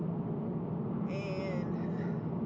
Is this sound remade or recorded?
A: recorded